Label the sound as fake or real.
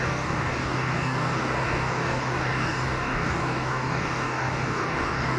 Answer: fake